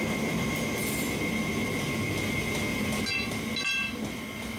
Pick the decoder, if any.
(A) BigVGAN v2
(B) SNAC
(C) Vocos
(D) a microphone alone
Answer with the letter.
D